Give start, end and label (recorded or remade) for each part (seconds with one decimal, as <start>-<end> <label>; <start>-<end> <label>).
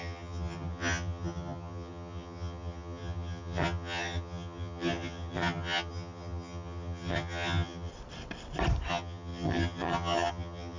0.0-7.9 remade; 7.9-8.9 recorded; 8.9-10.8 remade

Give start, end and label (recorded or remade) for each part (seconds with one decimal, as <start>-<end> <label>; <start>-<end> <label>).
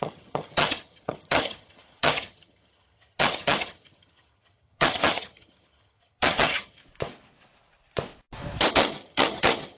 0.0-6.8 remade; 6.8-8.7 recorded; 8.7-9.8 remade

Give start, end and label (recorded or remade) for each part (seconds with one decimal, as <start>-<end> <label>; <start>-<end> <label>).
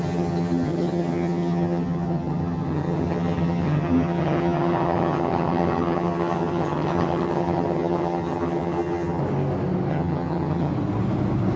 0.0-9.2 remade; 9.2-9.9 recorded; 9.9-10.7 remade; 10.7-11.6 recorded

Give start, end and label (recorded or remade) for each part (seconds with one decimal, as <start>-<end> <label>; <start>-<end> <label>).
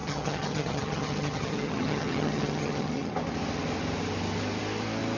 0.0-3.1 remade; 3.1-5.2 recorded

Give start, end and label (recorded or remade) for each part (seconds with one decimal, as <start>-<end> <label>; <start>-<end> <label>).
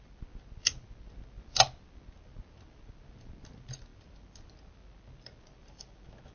0.0-6.3 recorded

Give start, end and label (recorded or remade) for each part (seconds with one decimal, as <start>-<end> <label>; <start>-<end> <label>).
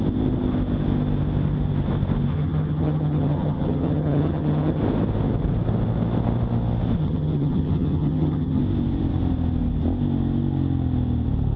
0.0-2.3 recorded; 2.3-4.8 remade; 4.8-7.0 recorded; 7.0-8.6 remade; 8.6-11.6 recorded